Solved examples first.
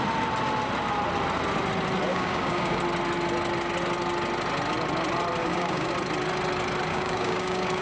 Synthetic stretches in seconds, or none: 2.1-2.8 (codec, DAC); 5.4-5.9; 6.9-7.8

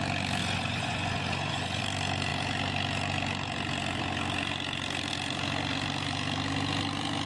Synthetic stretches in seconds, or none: 0.4-1.8 (vocoder, Vocos)

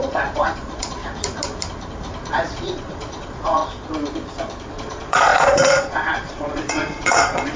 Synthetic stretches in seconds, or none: 0.0-1.0 (vocoder, Vocos); 2.3-3.6; 4.7-7.6

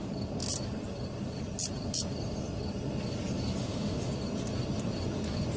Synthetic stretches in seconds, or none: 3.6-4.1 (autoencoder, DAC-VAE)